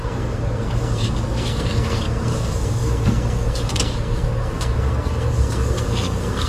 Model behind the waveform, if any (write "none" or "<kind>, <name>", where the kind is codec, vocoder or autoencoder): codec, SNAC